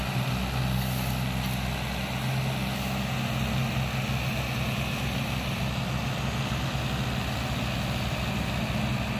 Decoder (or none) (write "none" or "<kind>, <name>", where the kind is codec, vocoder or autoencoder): none